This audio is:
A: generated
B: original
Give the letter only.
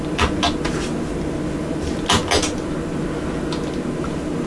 B